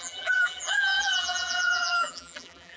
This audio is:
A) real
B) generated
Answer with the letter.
B